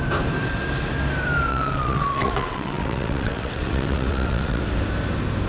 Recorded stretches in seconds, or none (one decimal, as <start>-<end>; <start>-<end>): 0.0-1.5; 4.6-5.5